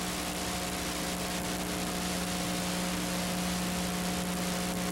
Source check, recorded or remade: recorded